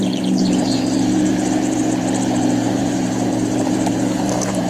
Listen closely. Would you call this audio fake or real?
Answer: fake